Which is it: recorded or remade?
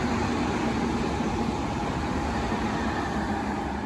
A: recorded